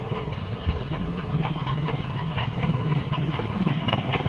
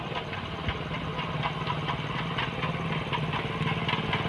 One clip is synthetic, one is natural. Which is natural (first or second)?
second